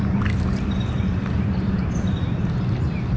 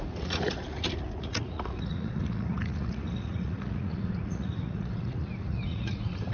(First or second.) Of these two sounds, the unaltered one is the first